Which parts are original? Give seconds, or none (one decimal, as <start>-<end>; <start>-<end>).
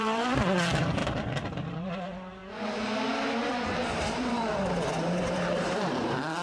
2.4-3.4